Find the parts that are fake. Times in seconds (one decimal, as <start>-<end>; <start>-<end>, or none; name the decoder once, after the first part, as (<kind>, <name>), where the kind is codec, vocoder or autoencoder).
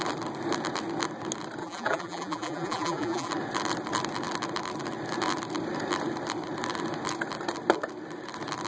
1.6-3.3 (vocoder, BigVGAN v2)